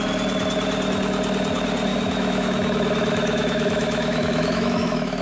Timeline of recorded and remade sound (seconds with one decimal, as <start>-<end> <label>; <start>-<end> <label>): 0.0-1.9 recorded; 1.9-5.2 remade